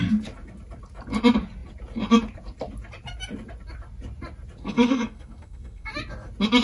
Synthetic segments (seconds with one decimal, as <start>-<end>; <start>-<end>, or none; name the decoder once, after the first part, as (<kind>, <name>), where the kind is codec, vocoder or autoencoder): 4.6-5.9 (codec, SNAC)